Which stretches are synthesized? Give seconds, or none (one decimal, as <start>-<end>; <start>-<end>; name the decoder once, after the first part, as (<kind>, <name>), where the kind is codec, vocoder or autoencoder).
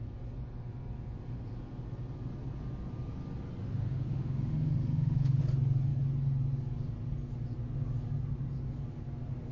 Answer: 3.6-5.4 (autoencoder, DAC-VAE)